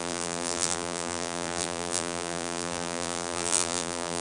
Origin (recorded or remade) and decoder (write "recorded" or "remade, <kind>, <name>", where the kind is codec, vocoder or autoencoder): remade, vocoder, BigVGAN v2